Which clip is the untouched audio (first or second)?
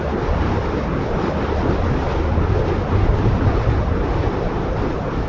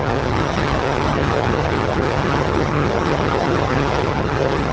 first